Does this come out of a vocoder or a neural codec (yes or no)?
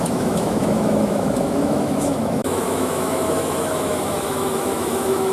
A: yes